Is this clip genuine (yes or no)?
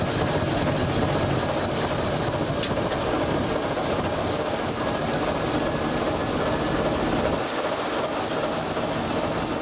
yes